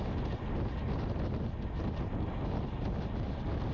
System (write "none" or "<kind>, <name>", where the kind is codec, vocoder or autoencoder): none